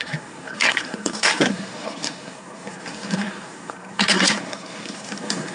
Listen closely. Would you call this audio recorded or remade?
remade